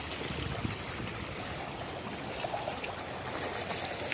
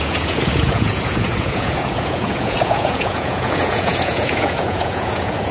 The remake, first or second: second